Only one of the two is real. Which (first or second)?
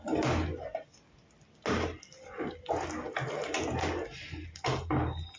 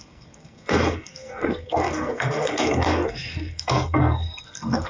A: first